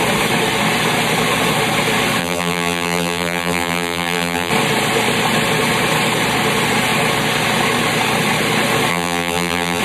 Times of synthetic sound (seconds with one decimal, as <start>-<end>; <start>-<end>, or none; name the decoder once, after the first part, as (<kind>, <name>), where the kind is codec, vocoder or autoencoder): 2.2-4.5 (vocoder, BigVGAN v2); 8.9-9.8